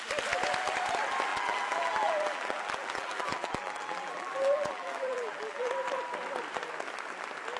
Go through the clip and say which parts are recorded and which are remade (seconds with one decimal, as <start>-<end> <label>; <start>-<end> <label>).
0.0-1.3 recorded; 1.3-5.7 remade; 5.7-7.6 recorded